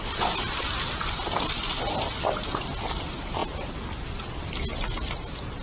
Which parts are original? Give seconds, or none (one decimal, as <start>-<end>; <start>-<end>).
0.0-5.6